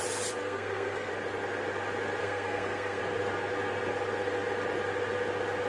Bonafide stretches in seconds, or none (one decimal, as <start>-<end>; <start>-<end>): 0.0-0.4; 1.1-2.2; 3.0-5.7